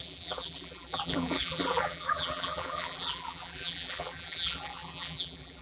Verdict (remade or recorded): remade